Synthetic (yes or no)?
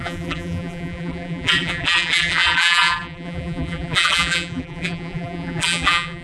yes